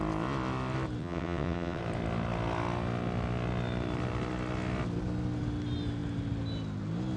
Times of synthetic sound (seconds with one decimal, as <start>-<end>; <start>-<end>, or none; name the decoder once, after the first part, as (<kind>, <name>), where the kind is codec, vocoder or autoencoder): 1.0-1.8 (vocoder, WaveNeXt)